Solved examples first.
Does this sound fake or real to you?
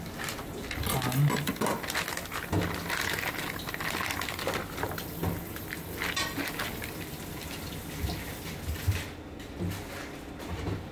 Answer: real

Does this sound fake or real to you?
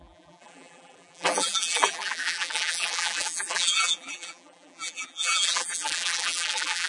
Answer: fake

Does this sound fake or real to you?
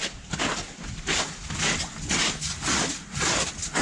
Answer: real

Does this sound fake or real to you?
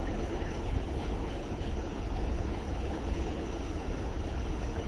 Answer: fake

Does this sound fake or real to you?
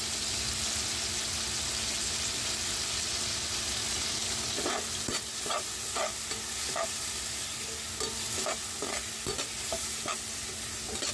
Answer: real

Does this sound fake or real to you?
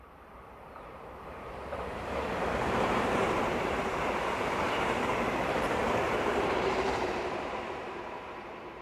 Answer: fake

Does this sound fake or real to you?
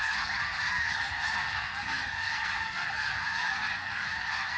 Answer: fake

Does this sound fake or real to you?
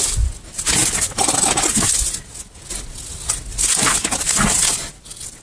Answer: real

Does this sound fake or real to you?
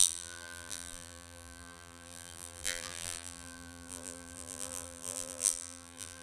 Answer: fake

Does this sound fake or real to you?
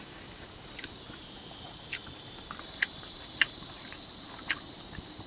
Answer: fake